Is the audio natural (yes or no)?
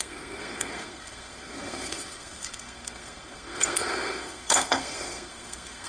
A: no